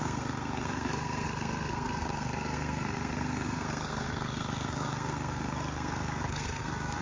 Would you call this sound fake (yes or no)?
yes